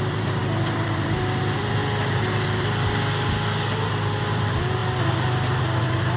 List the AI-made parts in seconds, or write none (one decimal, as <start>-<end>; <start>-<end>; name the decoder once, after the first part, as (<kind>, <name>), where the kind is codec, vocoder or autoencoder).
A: 0.0-1.8 (vocoder, BigVGAN v2); 4.3-4.8; 5.6-6.2